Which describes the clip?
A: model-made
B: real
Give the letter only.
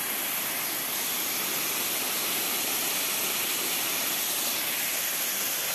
B